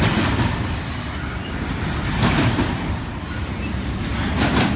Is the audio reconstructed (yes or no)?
no